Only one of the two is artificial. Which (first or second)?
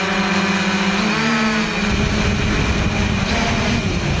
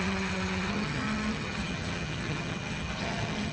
second